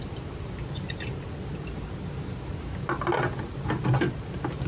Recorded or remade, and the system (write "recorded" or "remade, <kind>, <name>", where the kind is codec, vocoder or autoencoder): recorded